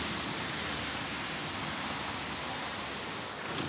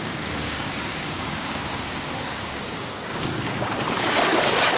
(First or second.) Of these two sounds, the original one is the first